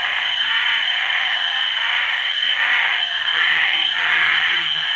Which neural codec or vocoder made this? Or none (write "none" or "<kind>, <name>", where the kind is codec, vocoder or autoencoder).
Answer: vocoder, HiFi-GAN